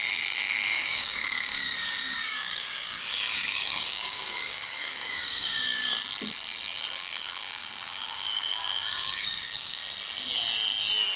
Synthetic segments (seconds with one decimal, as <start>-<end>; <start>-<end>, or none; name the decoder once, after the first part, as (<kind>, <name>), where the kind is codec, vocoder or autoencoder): 0.0-5.8 (codec, DAC); 7.0-9.8